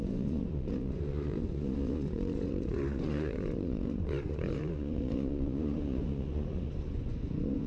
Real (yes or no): no